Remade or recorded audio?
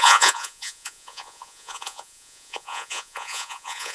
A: remade